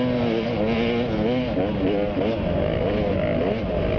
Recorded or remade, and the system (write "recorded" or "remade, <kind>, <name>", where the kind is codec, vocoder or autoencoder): recorded